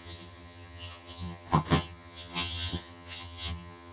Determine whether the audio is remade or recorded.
remade